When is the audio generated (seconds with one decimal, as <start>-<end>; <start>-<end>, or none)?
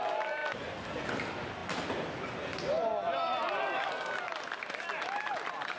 none